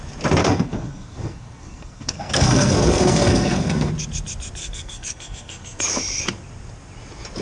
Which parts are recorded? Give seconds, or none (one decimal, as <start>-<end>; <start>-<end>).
0.0-0.4; 3.9-4.6; 5.8-7.4